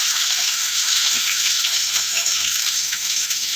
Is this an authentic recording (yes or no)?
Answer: no